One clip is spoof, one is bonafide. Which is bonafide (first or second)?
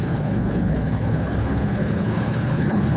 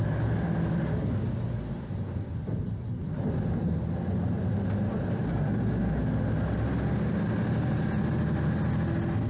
second